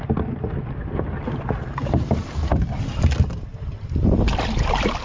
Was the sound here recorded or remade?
recorded